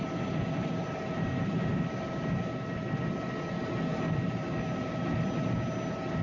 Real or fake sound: real